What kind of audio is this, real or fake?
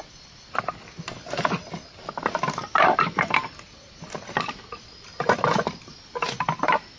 real